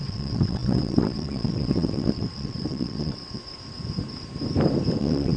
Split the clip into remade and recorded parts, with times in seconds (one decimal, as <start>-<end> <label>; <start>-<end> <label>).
0.0-3.4 remade; 3.4-5.0 recorded; 5.0-5.4 remade